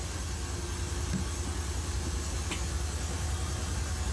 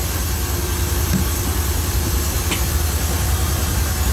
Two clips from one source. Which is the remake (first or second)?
second